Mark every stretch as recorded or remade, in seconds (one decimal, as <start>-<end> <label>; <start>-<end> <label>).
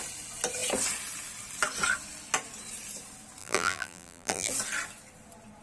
0.0-3.4 recorded; 3.4-4.5 remade; 4.5-5.6 recorded